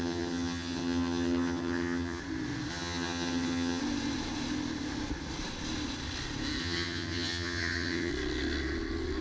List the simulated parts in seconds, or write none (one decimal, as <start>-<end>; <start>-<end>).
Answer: 0.0-2.2; 2.7-3.8; 6.6-8.1